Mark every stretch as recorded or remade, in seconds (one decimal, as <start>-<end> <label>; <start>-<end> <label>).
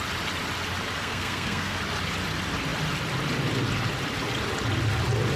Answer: 0.0-1.0 recorded; 1.0-1.8 remade; 1.8-5.4 recorded